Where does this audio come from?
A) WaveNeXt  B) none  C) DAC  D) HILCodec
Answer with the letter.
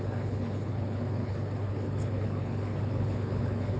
D